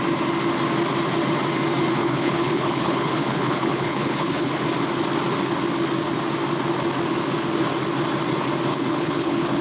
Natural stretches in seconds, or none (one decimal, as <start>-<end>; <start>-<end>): 0.0-2.0; 4.5-8.7